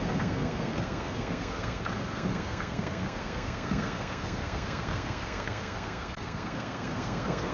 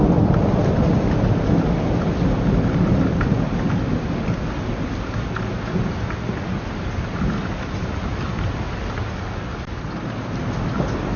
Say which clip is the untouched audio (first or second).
second